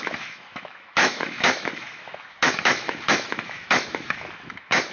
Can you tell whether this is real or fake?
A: fake